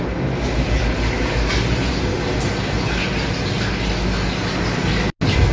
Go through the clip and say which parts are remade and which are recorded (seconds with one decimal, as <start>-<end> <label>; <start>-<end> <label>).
0.0-5.5 recorded

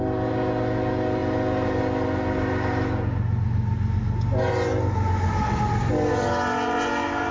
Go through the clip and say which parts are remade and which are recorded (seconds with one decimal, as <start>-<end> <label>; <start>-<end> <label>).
0.0-7.3 recorded

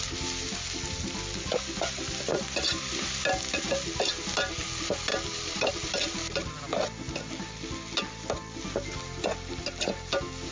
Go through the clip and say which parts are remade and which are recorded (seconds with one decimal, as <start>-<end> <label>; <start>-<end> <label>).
0.0-2.3 recorded; 2.3-2.9 remade; 2.9-5.1 recorded; 5.1-5.7 remade; 5.7-10.5 recorded